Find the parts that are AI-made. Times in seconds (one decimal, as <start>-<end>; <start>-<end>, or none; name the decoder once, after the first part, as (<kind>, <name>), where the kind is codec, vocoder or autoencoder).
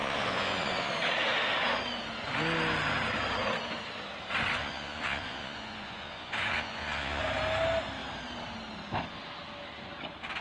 0.0-0.9 (vocoder, Vocos); 4.6-7.2